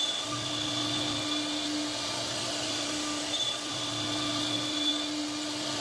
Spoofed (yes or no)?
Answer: no